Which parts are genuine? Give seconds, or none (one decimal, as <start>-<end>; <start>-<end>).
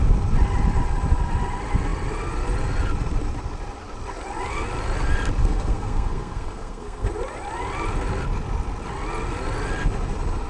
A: 0.0-5.4; 7.1-10.5